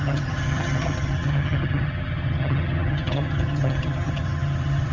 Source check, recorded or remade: remade